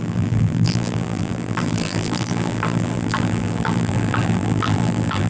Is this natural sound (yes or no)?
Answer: no